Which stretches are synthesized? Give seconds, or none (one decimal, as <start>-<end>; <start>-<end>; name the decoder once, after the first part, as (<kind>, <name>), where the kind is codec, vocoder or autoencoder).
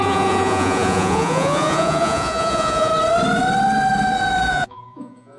0.0-2.9 (vocoder, Vocos); 4.5-5.4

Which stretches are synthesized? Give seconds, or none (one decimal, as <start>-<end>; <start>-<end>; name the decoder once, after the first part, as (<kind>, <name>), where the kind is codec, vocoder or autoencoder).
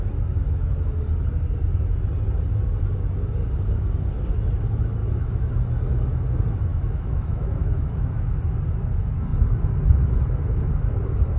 5.0-5.5 (autoencoder, DAC-VAE); 6.7-8.4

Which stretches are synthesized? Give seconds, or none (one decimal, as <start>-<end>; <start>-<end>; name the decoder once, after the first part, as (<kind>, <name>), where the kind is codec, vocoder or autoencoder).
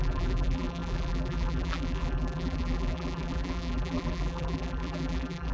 0.0-5.5 (vocoder, BigVGAN v2)